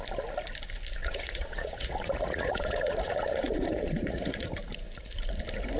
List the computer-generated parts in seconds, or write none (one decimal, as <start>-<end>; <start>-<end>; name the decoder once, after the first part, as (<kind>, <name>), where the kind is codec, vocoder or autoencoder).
1.0-4.5 (vocoder, Vocos)